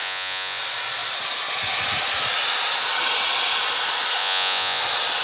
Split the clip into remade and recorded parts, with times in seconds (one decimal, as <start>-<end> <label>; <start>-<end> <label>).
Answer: 0.0-0.6 remade; 0.6-4.2 recorded; 4.2-4.8 remade; 4.8-5.2 recorded